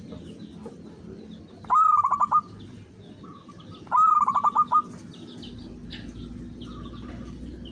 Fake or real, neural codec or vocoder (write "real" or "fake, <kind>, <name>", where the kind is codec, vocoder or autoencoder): real